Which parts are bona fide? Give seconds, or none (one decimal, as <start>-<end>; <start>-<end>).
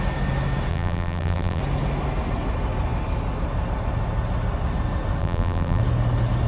0.0-0.7; 1.6-5.2; 5.8-6.5